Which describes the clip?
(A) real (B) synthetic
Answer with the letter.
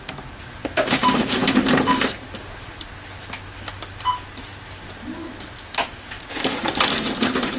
A